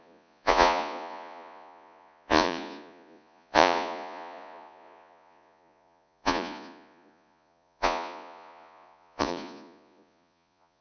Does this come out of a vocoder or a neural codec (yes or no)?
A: yes